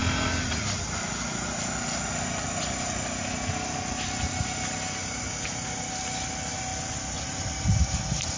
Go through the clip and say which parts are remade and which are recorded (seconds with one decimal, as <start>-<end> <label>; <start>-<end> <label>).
0.0-8.4 recorded